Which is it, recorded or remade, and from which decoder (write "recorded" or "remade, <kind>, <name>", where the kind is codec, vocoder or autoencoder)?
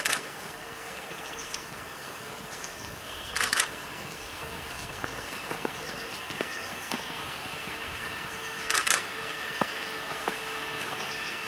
remade, codec, SNAC